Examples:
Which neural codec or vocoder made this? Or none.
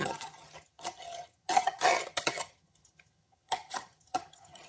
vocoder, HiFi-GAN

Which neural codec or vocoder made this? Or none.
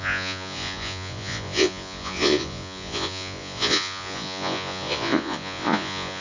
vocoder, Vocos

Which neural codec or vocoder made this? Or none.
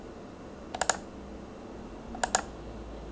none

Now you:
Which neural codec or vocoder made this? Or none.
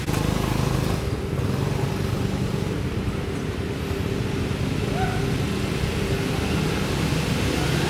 none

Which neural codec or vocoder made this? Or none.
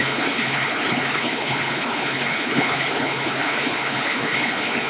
codec, HILCodec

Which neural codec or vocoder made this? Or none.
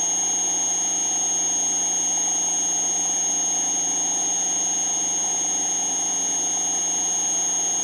none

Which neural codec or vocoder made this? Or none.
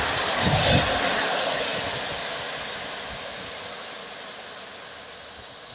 none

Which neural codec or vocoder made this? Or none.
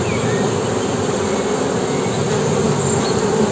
none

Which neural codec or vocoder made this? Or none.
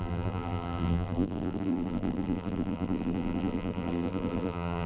vocoder, BigVGAN v2